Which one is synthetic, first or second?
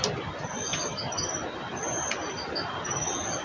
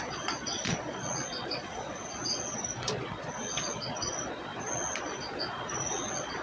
second